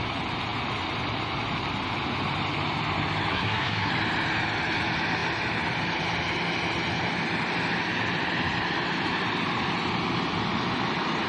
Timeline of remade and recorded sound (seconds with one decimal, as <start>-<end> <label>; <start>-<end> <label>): 0.0-3.3 recorded; 3.3-3.9 remade; 3.9-11.3 recorded